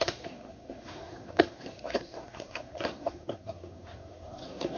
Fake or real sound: fake